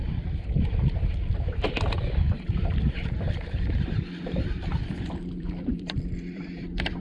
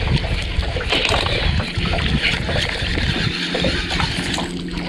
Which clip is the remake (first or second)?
first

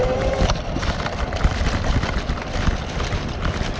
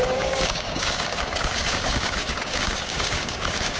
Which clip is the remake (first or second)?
second